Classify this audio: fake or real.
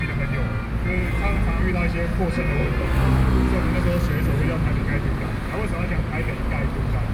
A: real